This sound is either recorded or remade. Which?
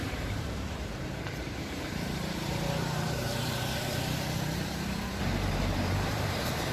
remade